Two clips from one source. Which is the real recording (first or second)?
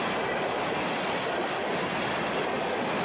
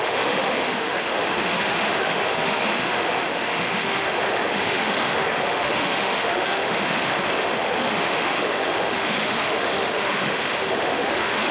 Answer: first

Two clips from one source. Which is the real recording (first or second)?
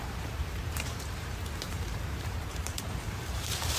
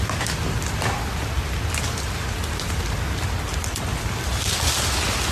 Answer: second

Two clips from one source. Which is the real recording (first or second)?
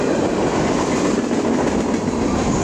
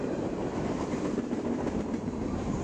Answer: first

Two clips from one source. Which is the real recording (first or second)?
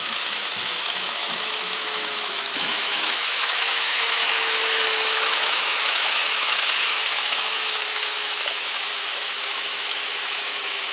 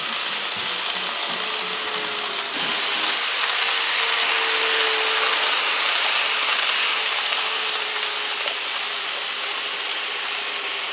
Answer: second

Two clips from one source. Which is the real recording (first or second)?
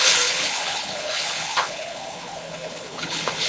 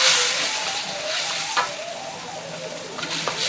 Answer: second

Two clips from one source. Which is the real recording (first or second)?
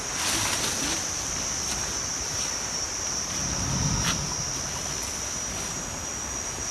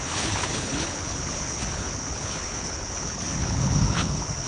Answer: first